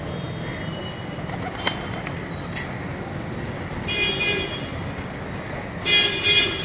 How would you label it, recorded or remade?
recorded